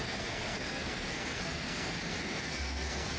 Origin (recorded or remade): remade